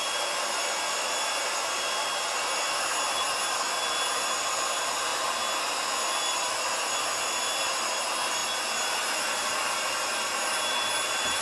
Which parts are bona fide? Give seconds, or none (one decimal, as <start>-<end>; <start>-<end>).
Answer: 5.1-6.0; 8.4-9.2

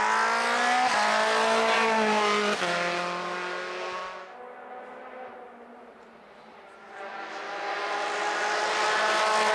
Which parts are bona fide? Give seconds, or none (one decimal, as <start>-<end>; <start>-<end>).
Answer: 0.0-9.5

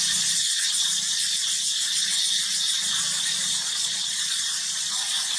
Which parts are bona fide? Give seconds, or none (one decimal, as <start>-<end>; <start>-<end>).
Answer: 0.0-3.3; 4.8-5.4